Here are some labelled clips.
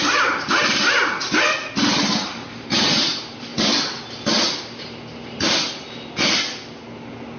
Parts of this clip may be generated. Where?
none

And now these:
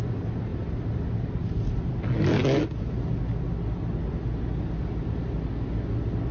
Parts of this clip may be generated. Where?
none